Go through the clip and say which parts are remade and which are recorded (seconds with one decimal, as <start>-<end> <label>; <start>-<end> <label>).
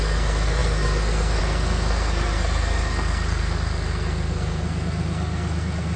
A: 0.0-6.0 remade